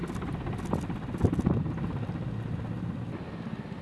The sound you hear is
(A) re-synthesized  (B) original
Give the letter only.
B